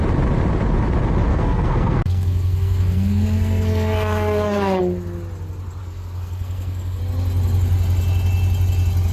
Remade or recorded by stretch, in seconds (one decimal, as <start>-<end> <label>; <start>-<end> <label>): 0.0-1.3 recorded; 1.3-4.8 remade; 4.8-5.8 recorded; 5.8-7.0 remade; 7.0-9.1 recorded

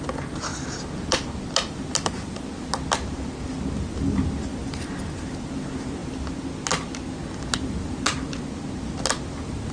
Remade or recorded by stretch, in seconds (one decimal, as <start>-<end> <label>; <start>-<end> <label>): 0.0-9.7 recorded

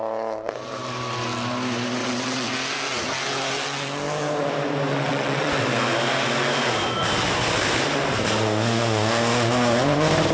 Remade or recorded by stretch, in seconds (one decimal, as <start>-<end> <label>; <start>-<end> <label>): 0.0-2.0 recorded; 2.0-2.5 remade; 2.5-4.9 recorded; 4.9-5.6 remade; 5.6-10.3 recorded

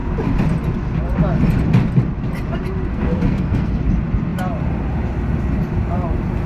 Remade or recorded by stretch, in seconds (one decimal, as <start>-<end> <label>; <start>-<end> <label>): 0.0-2.9 recorded; 2.9-3.8 remade; 3.8-6.5 recorded